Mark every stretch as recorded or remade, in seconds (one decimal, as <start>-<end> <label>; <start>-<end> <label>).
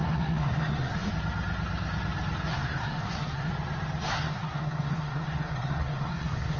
0.0-1.1 remade; 1.1-2.5 recorded; 2.5-3.5 remade; 3.5-4.1 recorded; 4.1-6.6 remade